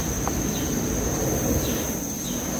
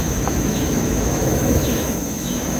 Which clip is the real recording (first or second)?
first